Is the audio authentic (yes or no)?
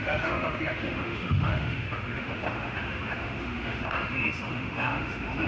no